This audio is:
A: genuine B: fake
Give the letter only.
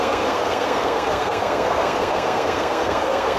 B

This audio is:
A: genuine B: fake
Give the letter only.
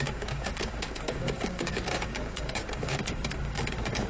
B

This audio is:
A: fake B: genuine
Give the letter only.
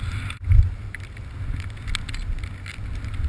B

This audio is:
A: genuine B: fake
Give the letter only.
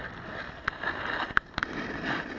A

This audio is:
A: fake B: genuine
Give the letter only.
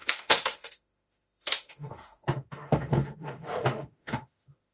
A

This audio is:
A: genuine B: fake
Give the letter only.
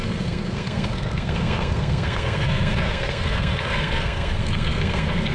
B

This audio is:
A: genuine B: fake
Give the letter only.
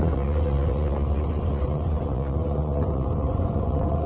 B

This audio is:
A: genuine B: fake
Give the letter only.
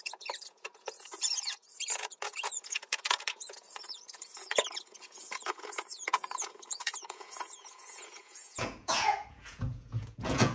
B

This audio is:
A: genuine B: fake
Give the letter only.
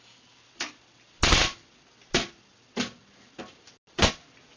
A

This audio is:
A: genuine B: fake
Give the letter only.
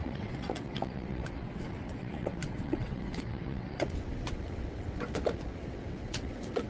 B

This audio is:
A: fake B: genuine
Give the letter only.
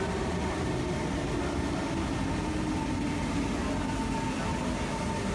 B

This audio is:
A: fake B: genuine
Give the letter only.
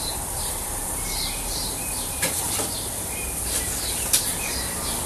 A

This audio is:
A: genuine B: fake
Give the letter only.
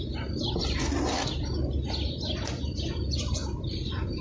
A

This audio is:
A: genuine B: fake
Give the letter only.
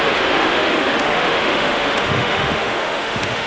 B